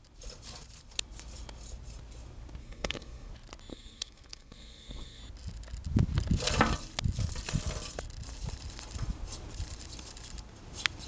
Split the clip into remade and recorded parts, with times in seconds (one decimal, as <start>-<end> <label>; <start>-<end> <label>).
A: 0.0-2.6 recorded; 2.6-3.3 remade; 3.3-3.7 recorded; 3.7-5.2 remade; 5.2-11.1 recorded

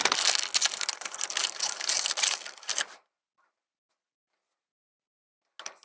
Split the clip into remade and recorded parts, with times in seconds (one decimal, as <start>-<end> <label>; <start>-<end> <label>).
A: 0.0-5.8 recorded

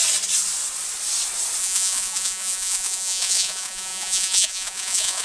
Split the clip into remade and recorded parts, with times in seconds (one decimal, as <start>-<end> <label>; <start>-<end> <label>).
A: 0.0-1.6 recorded; 1.6-5.2 remade

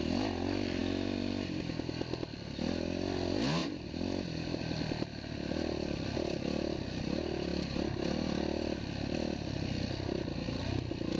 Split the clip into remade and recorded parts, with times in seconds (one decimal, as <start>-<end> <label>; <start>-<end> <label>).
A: 0.0-11.2 recorded

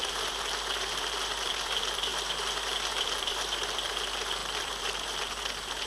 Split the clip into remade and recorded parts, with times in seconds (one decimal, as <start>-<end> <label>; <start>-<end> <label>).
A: 0.0-2.1 remade; 2.1-3.0 recorded; 3.0-5.9 remade